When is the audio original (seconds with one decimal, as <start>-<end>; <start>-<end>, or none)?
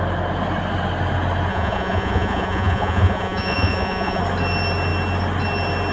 0.0-1.5; 4.2-5.9